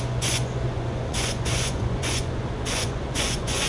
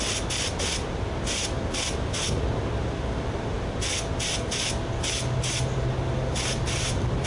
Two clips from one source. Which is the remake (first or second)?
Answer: first